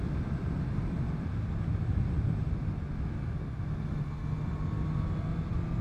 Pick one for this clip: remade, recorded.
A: recorded